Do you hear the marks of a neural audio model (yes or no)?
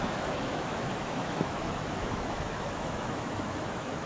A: yes